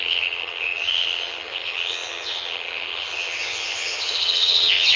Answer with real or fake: fake